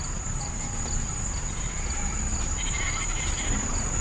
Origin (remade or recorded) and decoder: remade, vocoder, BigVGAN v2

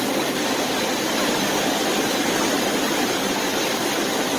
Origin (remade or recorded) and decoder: remade, vocoder, BigVGAN v2